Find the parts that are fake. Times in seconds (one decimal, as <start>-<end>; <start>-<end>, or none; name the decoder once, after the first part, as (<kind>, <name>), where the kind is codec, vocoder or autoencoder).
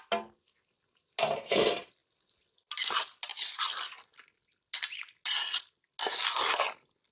none